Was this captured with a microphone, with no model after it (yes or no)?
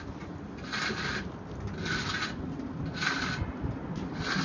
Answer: yes